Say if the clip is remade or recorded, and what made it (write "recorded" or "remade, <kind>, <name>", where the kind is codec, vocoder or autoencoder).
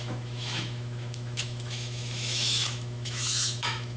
remade, autoencoder, DAC-VAE